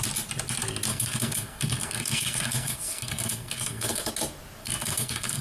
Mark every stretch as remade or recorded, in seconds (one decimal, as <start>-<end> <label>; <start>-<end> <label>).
0.0-0.9 recorded; 0.9-4.1 remade; 4.1-4.6 recorded; 4.6-5.4 remade